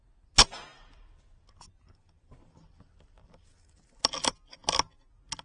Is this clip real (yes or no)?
yes